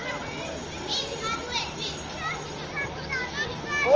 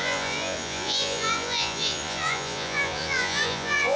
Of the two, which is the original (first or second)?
first